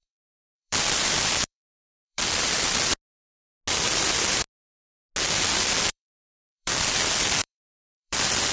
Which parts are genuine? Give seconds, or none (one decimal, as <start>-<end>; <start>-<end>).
2.9-5.7